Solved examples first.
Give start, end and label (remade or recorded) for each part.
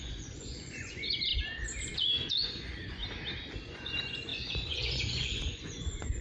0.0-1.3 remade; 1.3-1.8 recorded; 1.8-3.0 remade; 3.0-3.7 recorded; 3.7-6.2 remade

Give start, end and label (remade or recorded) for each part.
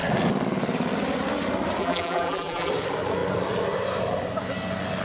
0.0-1.8 recorded; 1.8-2.7 remade; 2.7-5.0 recorded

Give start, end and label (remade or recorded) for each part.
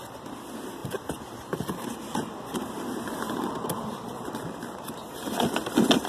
0.0-0.8 recorded; 0.8-4.3 remade; 4.3-6.1 recorded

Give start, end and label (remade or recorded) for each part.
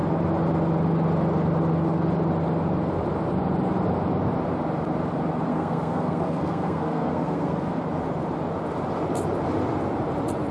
0.0-5.5 recorded; 5.5-7.8 remade; 7.8-10.5 recorded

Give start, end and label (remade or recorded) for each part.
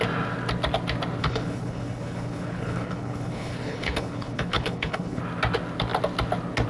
0.0-1.2 recorded; 1.2-5.2 remade; 5.2-6.7 recorded